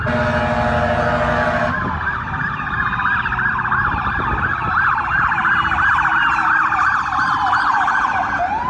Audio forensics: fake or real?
real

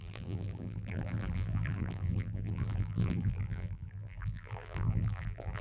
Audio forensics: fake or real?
fake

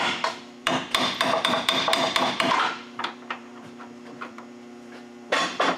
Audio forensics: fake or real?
fake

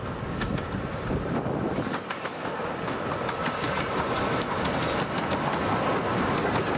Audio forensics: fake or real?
real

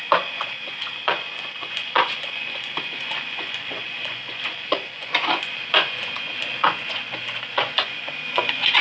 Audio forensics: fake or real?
fake